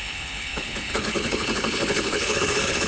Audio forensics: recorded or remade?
remade